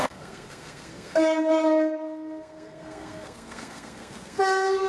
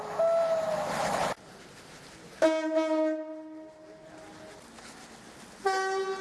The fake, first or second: first